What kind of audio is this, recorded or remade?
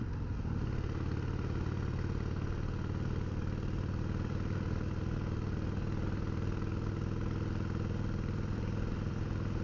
recorded